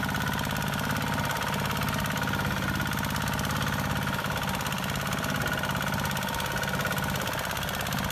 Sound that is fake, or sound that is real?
real